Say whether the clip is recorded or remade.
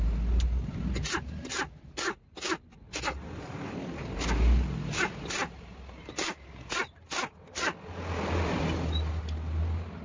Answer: recorded